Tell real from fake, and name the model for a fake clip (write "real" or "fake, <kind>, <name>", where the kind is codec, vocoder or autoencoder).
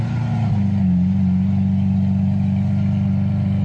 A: real